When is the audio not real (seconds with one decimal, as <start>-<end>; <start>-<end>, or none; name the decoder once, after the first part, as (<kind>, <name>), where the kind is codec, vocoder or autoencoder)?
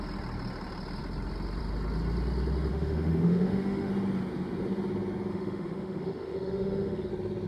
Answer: 2.7-3.9 (autoencoder, DAC-VAE); 5.3-7.1